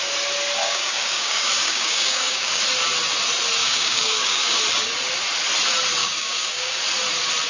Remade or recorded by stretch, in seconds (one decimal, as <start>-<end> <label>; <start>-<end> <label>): 0.0-0.6 recorded; 0.6-2.6 remade; 2.6-3.6 recorded; 3.6-4.6 remade; 4.6-6.0 recorded; 6.0-6.8 remade; 6.8-7.5 recorded